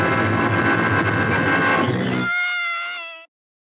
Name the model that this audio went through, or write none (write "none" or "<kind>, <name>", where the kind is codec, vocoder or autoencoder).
none